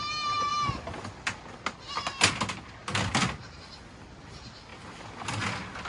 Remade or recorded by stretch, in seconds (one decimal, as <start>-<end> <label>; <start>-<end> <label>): 0.0-5.9 recorded

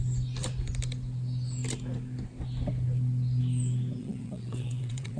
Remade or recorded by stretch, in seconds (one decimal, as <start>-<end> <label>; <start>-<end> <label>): 0.0-4.0 recorded; 4.0-5.2 remade

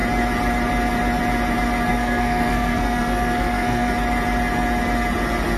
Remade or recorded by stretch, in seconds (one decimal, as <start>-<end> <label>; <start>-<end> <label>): 0.0-1.9 recorded; 1.9-3.9 remade; 3.9-5.6 recorded

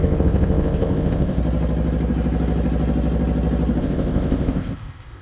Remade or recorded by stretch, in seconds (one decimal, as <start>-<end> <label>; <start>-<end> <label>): 0.0-1.4 remade; 1.4-3.8 recorded; 3.8-5.2 remade